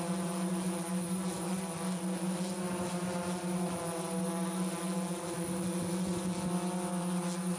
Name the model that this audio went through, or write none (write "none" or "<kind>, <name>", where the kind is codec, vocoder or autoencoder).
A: none